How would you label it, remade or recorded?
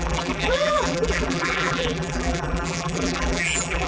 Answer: remade